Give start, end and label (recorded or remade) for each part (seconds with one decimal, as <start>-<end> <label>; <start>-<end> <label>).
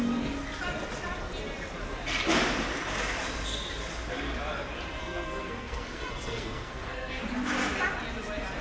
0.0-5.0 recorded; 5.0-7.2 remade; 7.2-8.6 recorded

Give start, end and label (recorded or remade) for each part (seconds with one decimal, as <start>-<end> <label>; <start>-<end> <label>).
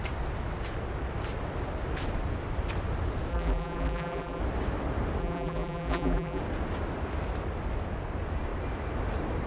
0.0-3.3 recorded; 3.3-4.4 remade; 4.4-5.2 recorded; 5.2-6.4 remade; 6.4-9.5 recorded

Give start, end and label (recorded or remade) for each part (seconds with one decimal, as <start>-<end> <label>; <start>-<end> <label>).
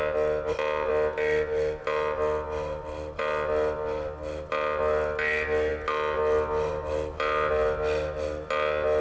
0.0-9.0 recorded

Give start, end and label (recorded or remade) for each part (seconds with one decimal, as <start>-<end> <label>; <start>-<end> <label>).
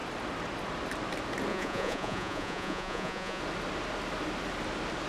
0.0-1.5 recorded; 1.5-3.4 remade; 3.4-5.1 recorded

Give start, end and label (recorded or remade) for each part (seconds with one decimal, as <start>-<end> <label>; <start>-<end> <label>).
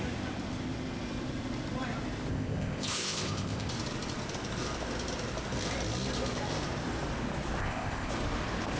0.0-2.3 recorded; 2.3-3.7 remade; 3.7-7.6 recorded; 7.6-8.1 remade; 8.1-8.8 recorded